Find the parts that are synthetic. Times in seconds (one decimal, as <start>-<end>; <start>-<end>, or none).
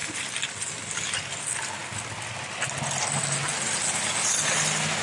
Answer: none